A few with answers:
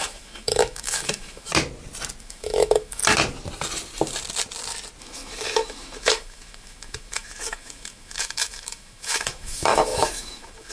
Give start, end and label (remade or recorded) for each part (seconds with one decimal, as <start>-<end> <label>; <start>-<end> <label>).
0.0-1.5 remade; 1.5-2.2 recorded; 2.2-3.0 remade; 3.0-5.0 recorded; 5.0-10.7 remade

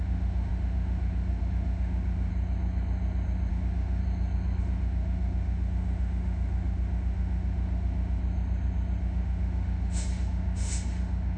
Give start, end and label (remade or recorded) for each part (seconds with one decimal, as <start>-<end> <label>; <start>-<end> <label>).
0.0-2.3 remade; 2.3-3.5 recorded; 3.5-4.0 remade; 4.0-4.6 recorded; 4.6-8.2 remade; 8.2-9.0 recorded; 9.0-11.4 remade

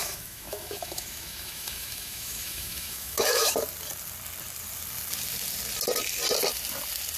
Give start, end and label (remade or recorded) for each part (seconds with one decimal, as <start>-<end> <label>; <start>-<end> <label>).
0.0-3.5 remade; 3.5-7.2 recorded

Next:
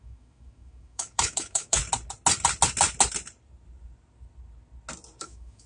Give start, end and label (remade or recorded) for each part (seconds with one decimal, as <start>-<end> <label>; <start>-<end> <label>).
0.0-1.8 remade; 1.8-5.2 recorded; 5.2-5.7 remade

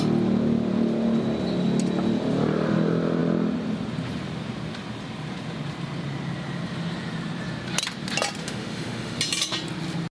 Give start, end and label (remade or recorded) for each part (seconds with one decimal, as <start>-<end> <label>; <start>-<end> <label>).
0.0-8.4 recorded; 8.4-9.2 remade; 9.2-10.1 recorded